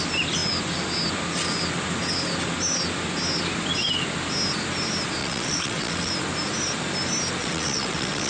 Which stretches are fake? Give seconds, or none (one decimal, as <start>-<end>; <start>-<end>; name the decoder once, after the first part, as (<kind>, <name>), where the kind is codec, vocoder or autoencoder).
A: 5.2-6.1 (vocoder, WaveNeXt); 7.4-8.3